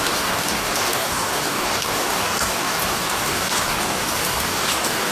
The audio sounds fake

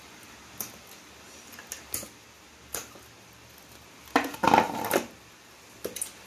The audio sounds real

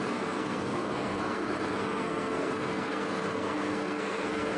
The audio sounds fake